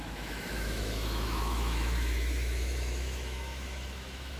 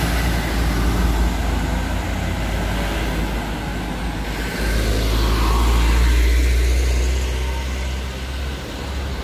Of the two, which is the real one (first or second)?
second